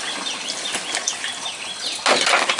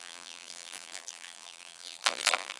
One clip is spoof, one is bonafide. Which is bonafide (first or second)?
first